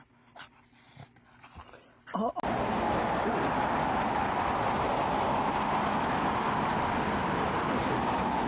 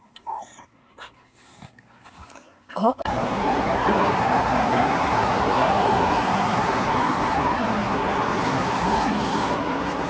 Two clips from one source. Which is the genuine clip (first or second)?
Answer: first